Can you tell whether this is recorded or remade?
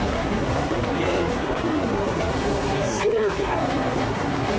remade